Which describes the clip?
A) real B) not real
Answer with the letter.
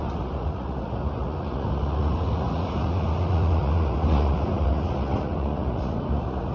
B